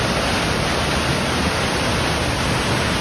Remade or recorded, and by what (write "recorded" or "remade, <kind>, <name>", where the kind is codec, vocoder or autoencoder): recorded